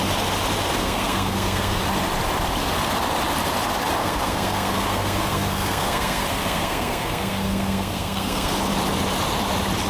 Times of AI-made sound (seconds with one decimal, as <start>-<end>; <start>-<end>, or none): 0.8-1.8; 4.0-8.5